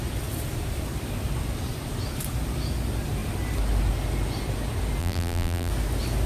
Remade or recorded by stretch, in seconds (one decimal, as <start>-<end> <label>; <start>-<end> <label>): 0.0-5.0 recorded; 5.0-5.7 remade; 5.7-6.3 recorded